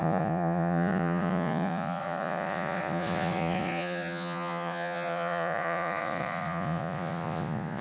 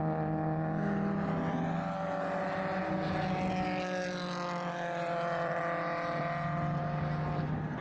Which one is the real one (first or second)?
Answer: second